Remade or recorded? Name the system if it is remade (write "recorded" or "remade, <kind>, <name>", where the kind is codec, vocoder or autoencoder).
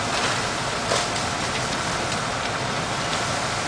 recorded